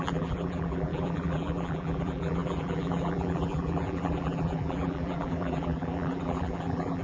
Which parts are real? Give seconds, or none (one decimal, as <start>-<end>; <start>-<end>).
none